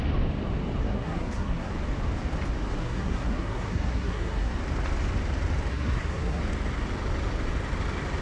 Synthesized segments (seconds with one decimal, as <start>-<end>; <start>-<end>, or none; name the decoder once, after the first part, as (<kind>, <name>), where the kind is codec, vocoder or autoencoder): 0.8-1.7 (codec, SNAC); 2.8-4.5; 5.7-6.4